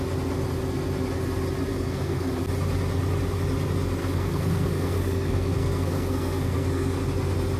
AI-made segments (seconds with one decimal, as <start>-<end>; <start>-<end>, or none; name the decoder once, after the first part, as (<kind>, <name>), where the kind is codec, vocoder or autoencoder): 1.7-2.3 (codec, SNAC); 4.0-7.0